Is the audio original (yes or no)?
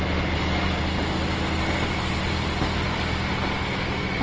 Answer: yes